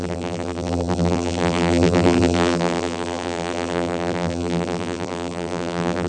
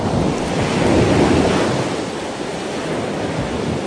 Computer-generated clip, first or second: first